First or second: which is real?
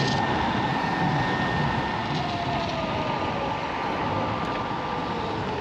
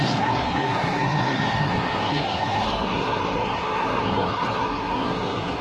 first